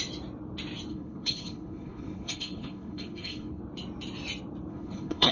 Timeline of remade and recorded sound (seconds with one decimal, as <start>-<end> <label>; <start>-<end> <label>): 0.0-0.9 recorded; 0.9-3.6 remade; 3.6-4.7 recorded; 4.7-5.3 remade